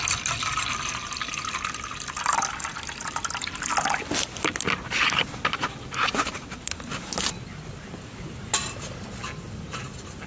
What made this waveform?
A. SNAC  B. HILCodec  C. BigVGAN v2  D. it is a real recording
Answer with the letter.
D